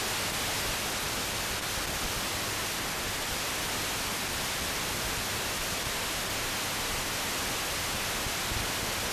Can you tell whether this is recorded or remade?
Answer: recorded